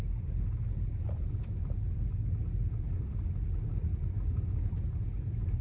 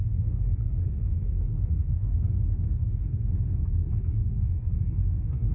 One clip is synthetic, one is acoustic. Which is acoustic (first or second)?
first